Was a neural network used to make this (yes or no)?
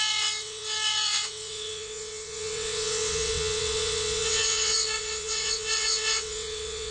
yes